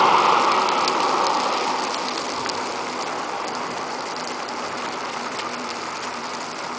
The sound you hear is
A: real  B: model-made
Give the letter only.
A